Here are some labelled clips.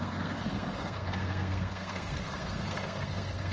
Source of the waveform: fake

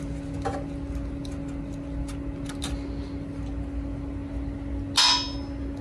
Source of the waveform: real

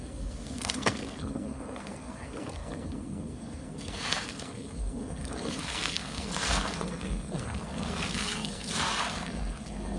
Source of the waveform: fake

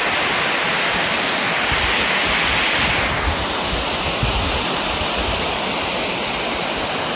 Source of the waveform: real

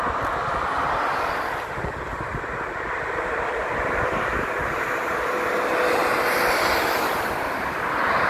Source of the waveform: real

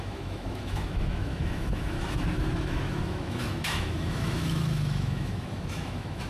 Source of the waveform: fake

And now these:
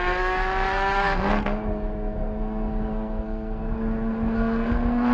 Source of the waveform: fake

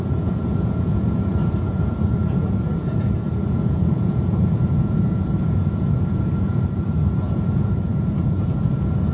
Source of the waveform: fake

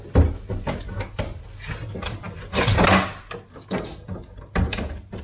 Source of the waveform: real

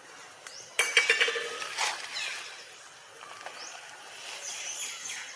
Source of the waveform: real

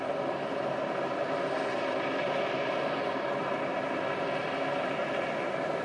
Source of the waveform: real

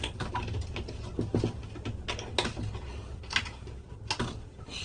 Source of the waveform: real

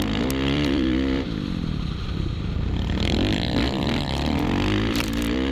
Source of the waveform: fake